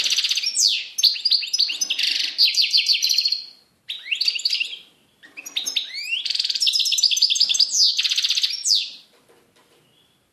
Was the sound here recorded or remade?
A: recorded